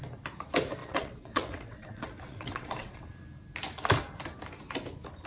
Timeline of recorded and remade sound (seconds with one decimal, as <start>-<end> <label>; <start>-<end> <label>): 0.0-0.8 recorded; 0.8-3.1 remade; 3.1-5.3 recorded